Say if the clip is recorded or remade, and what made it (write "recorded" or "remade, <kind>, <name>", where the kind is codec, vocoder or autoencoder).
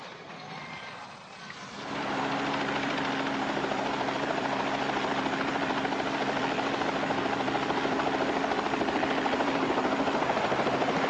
remade, vocoder, BigVGAN v2